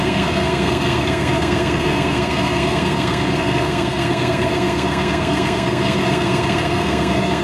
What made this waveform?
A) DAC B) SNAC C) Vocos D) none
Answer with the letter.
B